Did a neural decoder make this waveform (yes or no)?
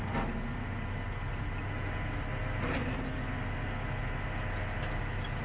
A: no